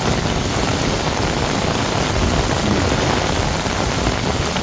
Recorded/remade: recorded